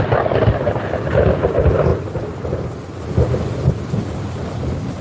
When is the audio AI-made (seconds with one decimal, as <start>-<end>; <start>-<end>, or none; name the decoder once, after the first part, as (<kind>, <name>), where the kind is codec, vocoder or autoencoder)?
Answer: none